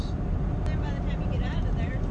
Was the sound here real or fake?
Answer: real